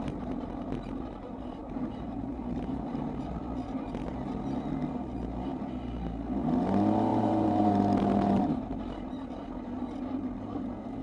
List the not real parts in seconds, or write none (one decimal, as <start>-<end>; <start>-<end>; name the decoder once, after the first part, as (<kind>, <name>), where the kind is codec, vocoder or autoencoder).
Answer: 1.6-2.9 (vocoder, BigVGAN v2); 7.1-9.1